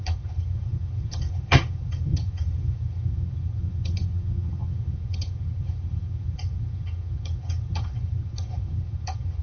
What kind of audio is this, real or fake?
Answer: fake